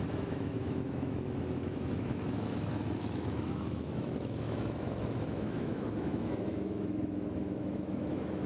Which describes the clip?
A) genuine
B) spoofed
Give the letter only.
B